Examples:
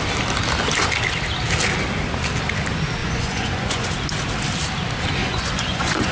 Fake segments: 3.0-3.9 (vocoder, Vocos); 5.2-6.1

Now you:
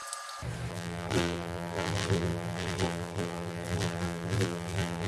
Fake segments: 0.7-5.1 (vocoder, BigVGAN v2)